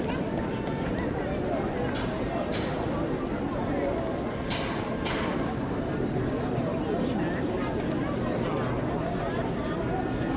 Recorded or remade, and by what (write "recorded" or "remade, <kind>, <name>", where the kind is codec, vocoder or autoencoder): recorded